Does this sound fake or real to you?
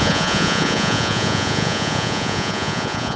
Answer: fake